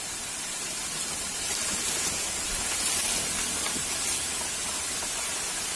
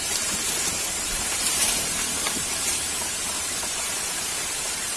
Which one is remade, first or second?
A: second